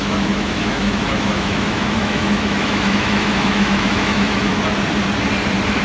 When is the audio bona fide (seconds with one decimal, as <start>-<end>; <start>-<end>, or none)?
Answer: 4.5-5.8